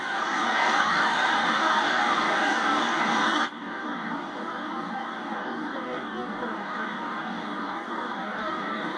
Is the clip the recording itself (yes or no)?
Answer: no